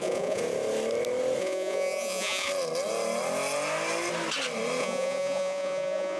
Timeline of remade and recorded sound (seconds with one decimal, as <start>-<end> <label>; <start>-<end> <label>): 0.0-0.4 remade; 0.4-1.4 recorded; 1.4-2.5 remade; 2.5-4.8 recorded; 4.8-6.2 remade